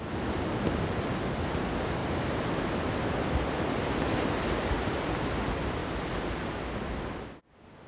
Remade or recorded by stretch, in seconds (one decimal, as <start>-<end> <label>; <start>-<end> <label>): 0.0-2.0 recorded; 2.0-2.9 remade; 2.9-7.9 recorded